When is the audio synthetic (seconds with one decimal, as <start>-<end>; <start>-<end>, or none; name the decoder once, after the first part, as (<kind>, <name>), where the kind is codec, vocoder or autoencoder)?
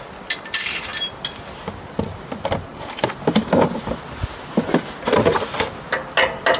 none